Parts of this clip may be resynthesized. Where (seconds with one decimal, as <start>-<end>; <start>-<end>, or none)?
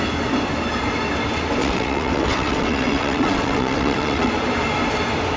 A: 1.6-4.3